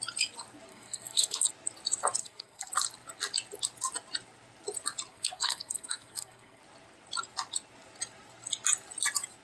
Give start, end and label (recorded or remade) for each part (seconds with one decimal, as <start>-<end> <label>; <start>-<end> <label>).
0.0-0.7 recorded; 0.7-1.5 remade; 1.5-2.2 recorded; 2.2-2.7 remade; 2.7-5.1 recorded; 5.1-6.6 remade; 6.6-9.4 recorded